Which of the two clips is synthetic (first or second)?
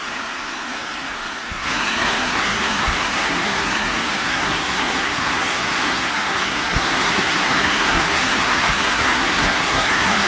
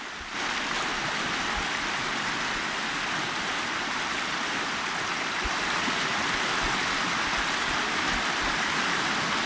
first